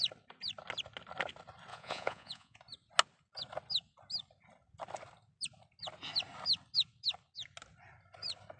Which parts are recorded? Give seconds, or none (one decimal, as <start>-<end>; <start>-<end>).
0.0-1.7; 2.6-8.6